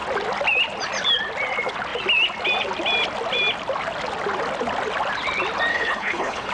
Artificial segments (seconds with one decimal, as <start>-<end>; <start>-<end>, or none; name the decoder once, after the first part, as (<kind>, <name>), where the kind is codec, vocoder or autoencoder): 5.7-6.5 (codec, HILCodec)

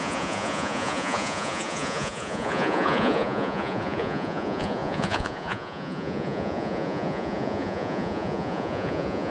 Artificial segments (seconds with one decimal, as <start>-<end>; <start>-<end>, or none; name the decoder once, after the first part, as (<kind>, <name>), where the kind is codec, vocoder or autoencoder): 0.0-9.3 (vocoder, Vocos)

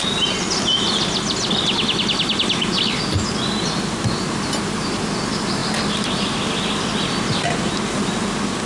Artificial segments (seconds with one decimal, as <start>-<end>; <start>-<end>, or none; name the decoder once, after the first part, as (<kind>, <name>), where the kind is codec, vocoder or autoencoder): none

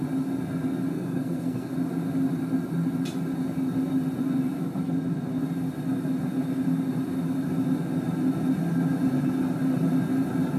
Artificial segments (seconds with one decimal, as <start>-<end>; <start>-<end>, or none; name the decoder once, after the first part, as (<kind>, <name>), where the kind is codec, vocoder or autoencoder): 0.9-1.7 (codec, SNAC)

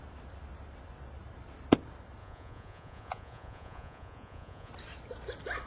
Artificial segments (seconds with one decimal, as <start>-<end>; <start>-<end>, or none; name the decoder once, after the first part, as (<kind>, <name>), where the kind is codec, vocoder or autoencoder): 2.2-4.7 (vocoder, Vocos)

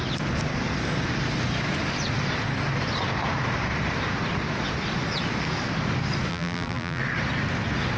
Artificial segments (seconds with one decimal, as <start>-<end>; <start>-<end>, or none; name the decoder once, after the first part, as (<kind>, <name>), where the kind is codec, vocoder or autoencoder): 6.3-7.0 (vocoder, BigVGAN v2)